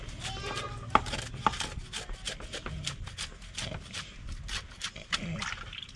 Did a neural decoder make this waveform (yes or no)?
no